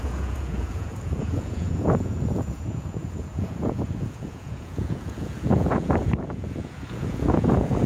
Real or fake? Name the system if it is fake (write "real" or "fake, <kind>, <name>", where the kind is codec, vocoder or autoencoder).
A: fake, vocoder, Vocos